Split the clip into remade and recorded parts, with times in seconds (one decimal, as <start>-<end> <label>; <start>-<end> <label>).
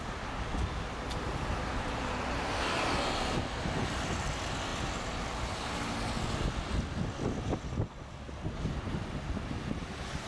0.0-10.3 recorded